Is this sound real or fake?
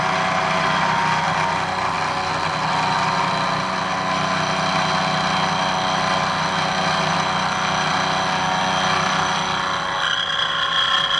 real